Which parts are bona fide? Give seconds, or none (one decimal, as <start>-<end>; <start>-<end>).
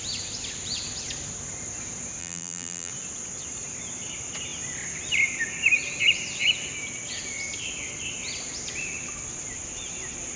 0.0-2.2; 2.9-10.4